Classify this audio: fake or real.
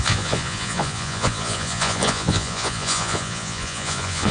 fake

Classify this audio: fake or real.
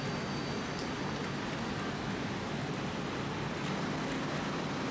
real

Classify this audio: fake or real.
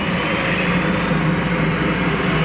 real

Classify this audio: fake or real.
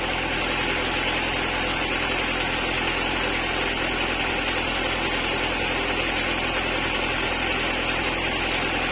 real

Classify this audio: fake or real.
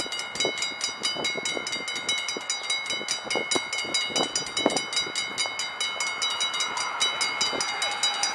real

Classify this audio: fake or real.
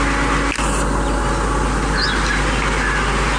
real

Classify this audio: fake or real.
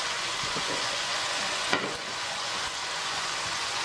fake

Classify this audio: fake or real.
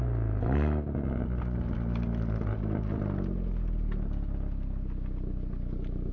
real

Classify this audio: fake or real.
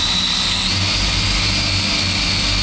real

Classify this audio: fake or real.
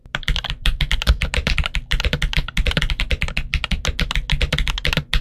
real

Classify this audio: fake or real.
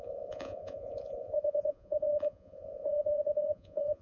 fake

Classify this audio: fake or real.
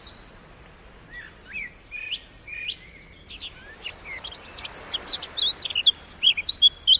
real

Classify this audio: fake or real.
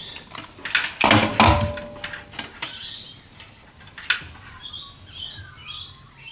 real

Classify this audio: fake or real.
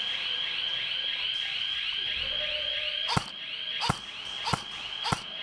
real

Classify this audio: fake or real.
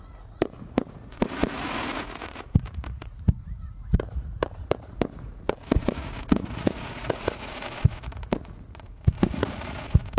fake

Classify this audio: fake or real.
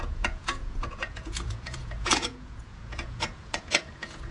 fake